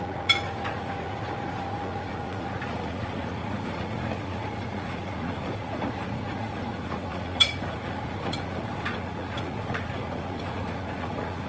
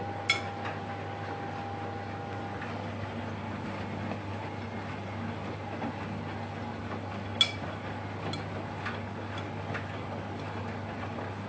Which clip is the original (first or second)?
second